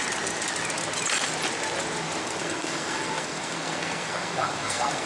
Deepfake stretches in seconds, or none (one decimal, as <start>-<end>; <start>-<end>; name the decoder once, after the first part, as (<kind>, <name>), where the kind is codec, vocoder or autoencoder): 2.2-5.1 (codec, SNAC)